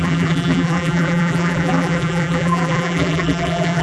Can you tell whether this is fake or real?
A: fake